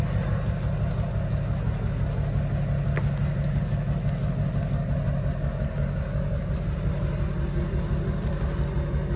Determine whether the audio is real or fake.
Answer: real